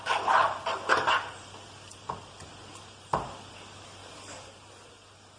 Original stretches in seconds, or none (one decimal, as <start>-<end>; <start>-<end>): 0.0-5.4